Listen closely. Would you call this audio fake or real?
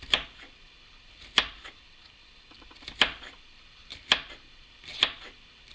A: real